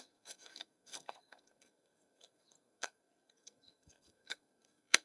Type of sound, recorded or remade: remade